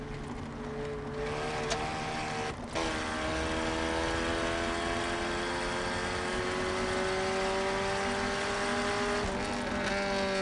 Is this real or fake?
real